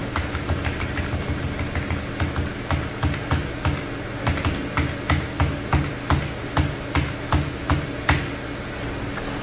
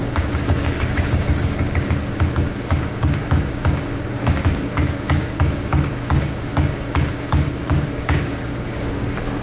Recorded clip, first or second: first